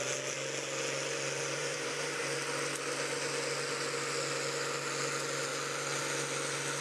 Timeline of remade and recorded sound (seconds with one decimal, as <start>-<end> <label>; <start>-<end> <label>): 0.0-1.6 recorded; 1.6-2.2 remade; 2.2-6.8 recorded